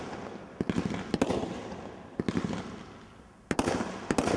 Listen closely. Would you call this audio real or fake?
real